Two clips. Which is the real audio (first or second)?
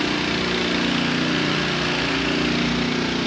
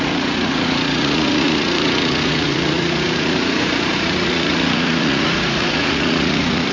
first